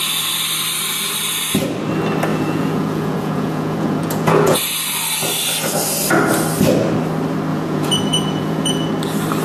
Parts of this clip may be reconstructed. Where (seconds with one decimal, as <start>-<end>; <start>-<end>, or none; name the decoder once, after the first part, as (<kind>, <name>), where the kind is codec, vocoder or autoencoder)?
2.3-4.6 (vocoder, Vocos); 7.5-8.9